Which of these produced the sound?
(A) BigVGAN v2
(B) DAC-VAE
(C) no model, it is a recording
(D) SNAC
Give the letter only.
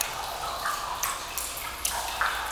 C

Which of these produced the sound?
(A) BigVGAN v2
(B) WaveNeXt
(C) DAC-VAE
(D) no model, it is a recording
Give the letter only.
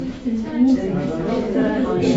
C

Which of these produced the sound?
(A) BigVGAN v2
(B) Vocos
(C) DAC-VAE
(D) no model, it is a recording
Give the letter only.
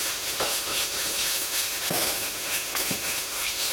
C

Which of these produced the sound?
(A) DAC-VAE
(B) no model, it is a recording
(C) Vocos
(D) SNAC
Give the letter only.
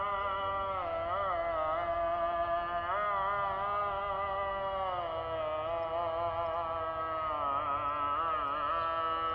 B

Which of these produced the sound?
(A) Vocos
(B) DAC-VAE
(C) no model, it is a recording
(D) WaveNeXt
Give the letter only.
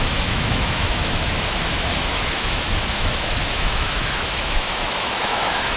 B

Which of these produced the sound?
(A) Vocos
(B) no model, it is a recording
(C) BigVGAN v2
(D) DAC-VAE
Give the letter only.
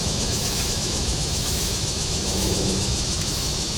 D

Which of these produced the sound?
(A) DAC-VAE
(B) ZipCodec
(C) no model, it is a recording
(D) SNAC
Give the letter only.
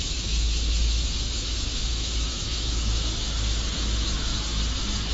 A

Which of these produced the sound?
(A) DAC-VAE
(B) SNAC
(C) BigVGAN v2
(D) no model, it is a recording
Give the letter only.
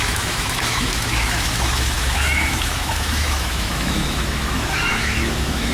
A